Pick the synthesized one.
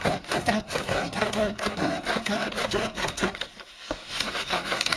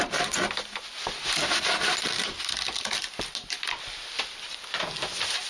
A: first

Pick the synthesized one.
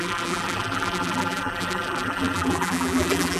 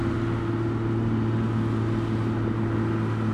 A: first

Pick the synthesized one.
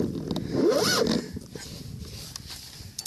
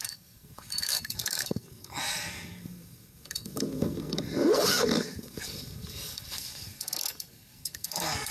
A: second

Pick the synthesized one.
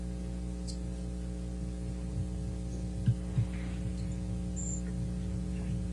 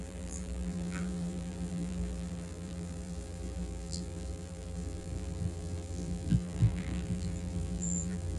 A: second